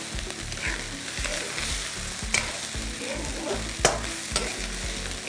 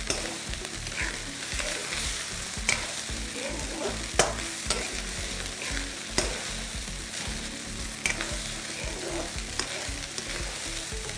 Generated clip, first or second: second